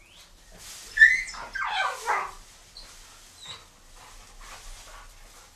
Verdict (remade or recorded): recorded